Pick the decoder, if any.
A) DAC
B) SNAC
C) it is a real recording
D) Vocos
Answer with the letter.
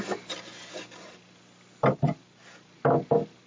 C